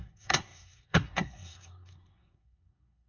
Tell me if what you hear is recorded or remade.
remade